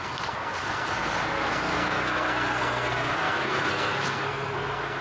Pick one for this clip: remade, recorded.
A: remade